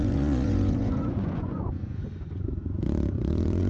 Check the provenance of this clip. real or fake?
fake